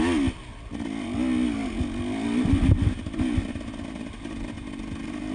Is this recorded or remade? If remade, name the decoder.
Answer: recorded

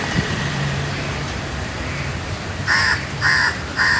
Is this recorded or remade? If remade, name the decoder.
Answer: remade, vocoder, BigVGAN v2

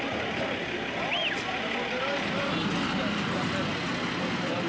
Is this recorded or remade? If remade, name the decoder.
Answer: recorded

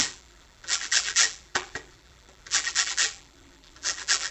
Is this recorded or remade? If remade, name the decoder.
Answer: remade, vocoder, BigVGAN v2